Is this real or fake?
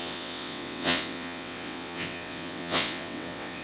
fake